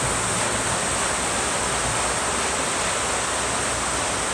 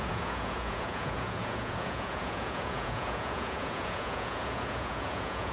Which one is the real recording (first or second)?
first